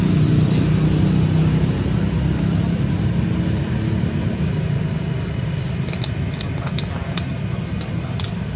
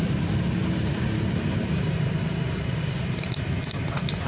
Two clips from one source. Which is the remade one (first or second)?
second